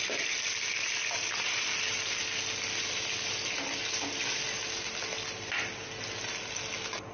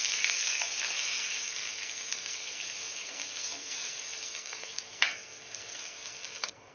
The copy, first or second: second